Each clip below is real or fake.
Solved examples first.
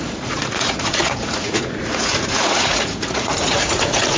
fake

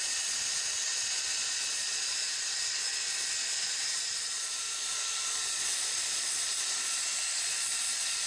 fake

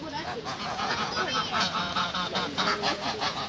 fake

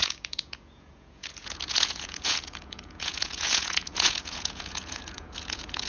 fake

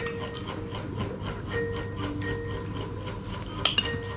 real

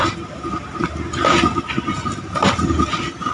real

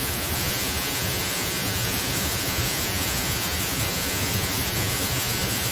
fake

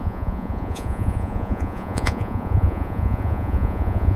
fake